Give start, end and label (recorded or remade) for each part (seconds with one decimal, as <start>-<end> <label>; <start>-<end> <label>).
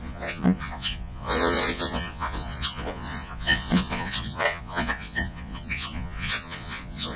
0.0-7.2 remade